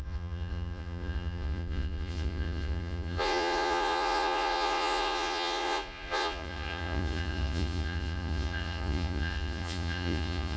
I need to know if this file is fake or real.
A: fake